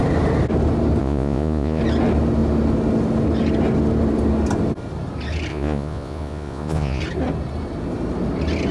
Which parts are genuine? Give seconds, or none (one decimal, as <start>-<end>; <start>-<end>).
0.0-1.0; 1.8-5.5; 7.0-8.7